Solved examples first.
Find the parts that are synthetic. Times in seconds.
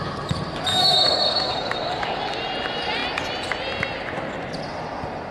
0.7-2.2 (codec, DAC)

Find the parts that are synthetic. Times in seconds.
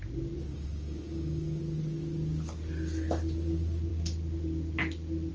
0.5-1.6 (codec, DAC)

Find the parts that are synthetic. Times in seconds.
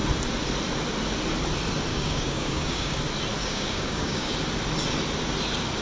1.9-3.0 (codec, DAC); 3.4-4.3